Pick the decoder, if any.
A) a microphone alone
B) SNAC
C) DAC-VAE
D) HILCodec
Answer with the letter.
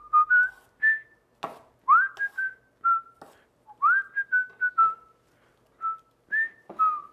A